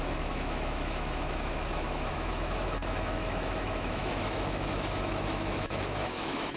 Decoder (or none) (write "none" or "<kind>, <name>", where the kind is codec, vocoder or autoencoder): autoencoder, DAC-VAE